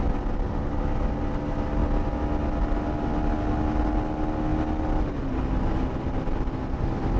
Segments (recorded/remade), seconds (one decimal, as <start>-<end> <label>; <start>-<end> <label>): 0.0-7.2 recorded